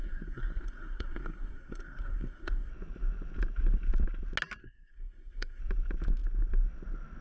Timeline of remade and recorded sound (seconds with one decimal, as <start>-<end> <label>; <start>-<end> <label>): 0.0-2.7 remade; 2.7-4.6 recorded; 4.6-5.6 remade; 5.6-7.2 recorded